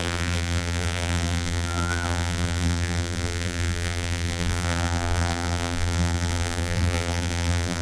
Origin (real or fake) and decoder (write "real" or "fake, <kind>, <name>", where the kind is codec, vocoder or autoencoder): fake, vocoder, BigVGAN v2